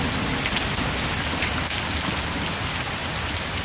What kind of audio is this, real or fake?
real